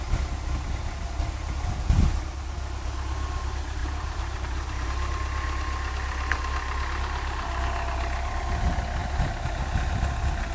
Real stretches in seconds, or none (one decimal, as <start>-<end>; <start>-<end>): 0.0-3.8; 4.9-9.0; 9.6-10.5